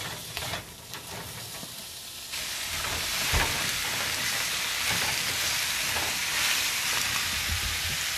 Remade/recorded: remade